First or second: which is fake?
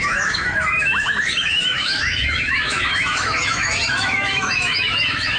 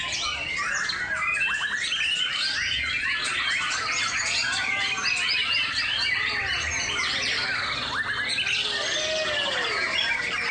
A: first